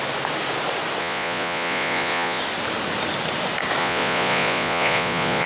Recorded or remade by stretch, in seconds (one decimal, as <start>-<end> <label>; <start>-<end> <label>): 0.0-1.0 recorded; 1.0-2.4 remade; 2.4-3.8 recorded; 3.8-5.5 remade